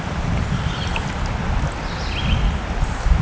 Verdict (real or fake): fake